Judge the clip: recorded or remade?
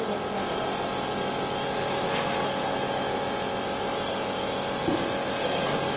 recorded